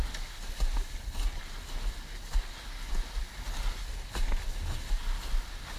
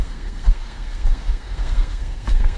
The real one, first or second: first